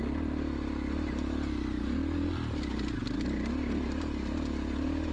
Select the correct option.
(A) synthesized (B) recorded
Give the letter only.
B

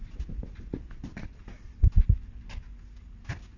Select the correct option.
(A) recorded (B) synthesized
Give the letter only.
A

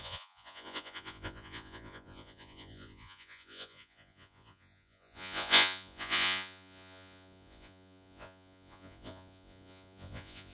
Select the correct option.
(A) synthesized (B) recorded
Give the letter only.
A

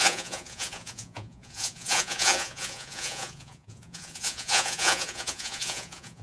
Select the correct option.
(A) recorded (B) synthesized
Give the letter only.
B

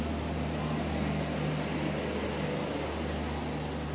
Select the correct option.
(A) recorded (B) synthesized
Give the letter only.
A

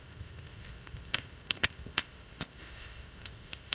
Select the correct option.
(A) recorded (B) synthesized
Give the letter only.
B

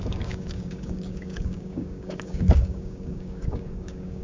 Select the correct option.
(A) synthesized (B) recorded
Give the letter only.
A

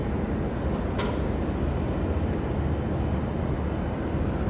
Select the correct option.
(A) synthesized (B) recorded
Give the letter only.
B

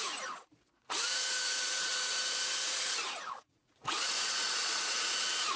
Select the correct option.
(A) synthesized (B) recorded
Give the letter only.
A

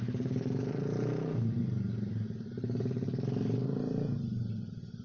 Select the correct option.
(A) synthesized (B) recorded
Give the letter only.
B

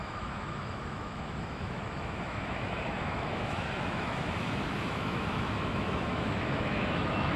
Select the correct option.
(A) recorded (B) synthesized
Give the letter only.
B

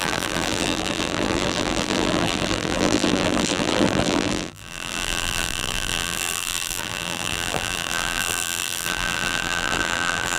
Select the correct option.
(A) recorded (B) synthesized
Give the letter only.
B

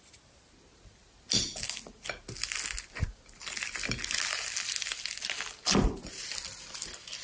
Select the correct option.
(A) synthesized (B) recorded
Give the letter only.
B